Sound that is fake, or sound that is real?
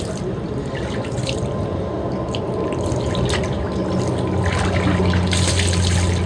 real